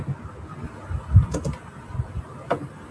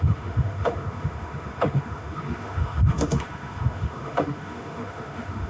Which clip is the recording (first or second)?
first